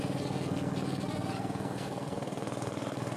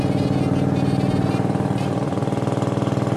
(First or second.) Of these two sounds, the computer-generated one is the first